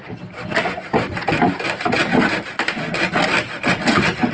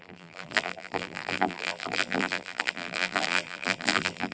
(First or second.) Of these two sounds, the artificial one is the second